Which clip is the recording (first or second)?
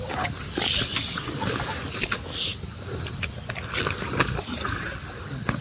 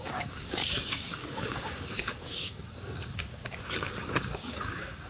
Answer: first